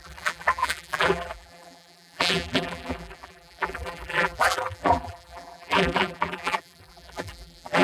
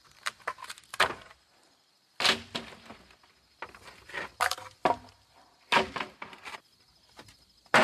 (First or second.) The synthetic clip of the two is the first